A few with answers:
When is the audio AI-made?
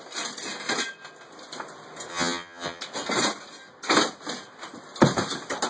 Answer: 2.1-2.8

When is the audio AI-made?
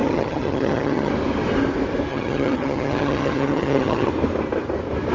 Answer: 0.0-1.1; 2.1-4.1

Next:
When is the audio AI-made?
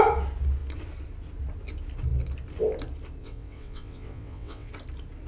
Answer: 3.2-4.7